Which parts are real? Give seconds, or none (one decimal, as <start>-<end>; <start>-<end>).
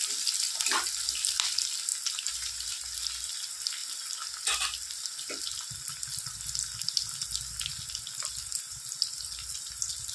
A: 0.0-1.9; 2.6-10.1